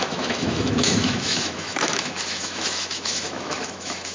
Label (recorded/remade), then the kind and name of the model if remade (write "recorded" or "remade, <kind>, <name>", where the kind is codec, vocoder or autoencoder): remade, autoencoder, DAC-VAE